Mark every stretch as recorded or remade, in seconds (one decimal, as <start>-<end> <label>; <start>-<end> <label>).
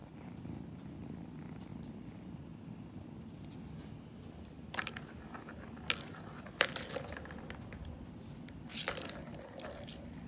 0.0-0.8 remade; 0.8-10.3 recorded